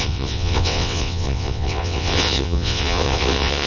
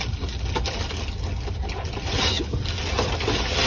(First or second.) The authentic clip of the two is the second